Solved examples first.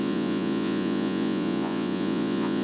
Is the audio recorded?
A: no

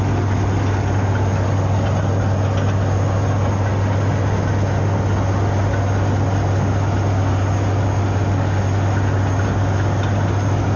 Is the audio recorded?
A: yes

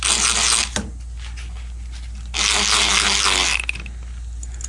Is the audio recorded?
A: yes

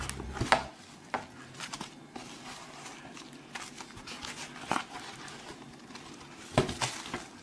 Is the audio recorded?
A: yes